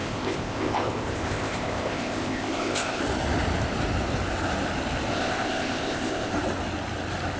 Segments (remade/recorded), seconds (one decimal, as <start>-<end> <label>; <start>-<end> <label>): 0.0-3.0 remade; 3.0-5.1 recorded; 5.1-6.3 remade; 6.3-7.4 recorded